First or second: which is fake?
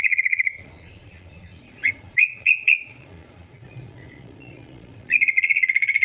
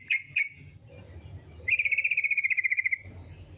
first